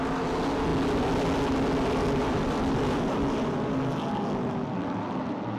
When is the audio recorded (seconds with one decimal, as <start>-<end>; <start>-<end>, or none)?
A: 0.0-5.6